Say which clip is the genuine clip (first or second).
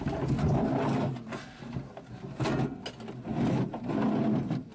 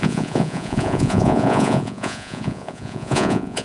first